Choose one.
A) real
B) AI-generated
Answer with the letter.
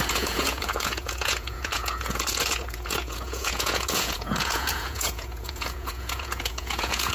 B